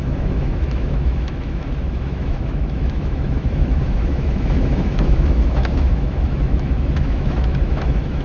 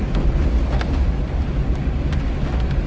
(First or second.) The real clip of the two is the second